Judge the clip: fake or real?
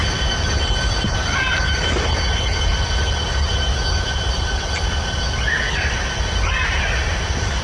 real